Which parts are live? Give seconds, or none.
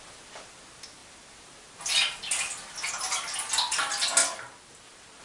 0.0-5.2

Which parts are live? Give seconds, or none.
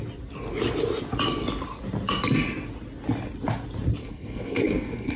0.0-4.0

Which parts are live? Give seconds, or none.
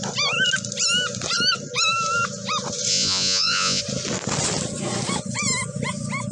0.0-2.9; 3.8-6.3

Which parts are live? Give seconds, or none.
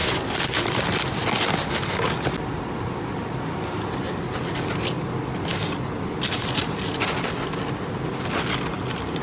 0.0-9.2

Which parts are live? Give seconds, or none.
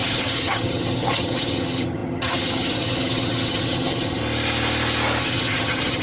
4.2-5.2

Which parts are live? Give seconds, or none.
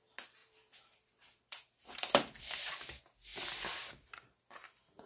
0.0-0.4; 2.7-5.1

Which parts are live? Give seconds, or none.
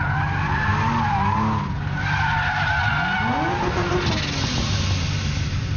0.0-5.8